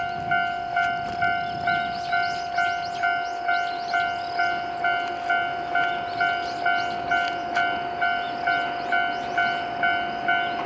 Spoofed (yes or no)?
no